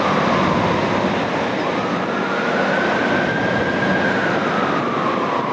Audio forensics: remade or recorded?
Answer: recorded